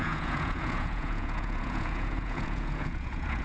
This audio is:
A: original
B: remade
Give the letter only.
B